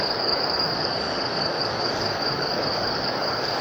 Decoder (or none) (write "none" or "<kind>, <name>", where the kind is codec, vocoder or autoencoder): codec, DAC